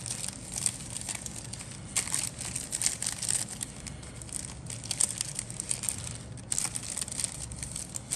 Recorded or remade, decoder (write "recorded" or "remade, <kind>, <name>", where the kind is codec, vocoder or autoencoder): recorded